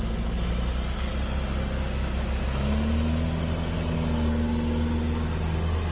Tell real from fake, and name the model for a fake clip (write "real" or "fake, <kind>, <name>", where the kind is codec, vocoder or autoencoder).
real